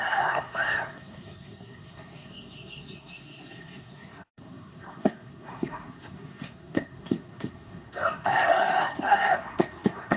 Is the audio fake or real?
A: fake